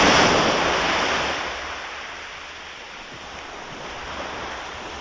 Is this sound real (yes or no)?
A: yes